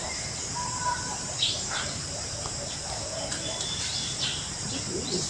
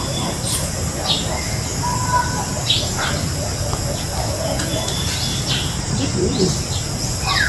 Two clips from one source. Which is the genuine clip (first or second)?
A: second